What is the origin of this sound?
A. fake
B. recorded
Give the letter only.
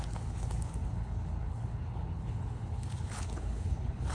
A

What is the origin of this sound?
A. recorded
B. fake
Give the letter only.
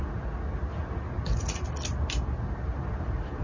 A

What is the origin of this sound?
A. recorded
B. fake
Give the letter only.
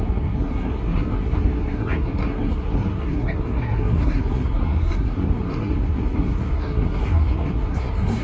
B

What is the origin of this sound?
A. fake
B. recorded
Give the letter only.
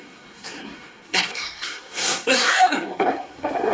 A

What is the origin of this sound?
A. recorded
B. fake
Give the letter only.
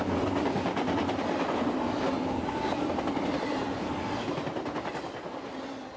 A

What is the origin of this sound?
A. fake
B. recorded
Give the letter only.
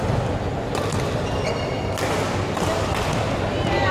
B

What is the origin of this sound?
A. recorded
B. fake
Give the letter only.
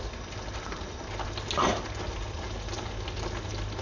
A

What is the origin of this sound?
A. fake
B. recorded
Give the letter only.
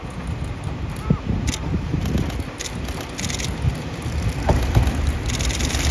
B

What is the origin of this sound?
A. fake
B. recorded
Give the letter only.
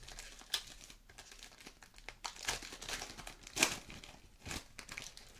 B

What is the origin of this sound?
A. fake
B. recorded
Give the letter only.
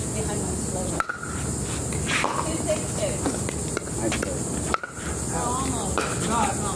B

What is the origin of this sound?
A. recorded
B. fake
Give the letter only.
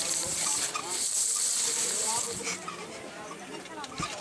B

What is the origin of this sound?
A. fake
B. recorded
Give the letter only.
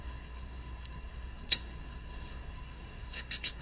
A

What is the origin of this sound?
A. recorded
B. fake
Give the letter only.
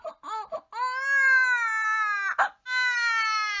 A